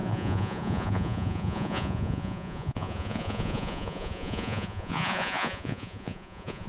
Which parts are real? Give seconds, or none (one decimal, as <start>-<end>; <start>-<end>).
none